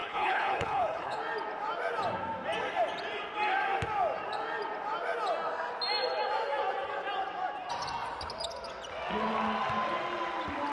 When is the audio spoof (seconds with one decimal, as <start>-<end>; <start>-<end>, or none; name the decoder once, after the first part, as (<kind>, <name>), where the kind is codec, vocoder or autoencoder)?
0.0-1.2 (codec, HILCodec)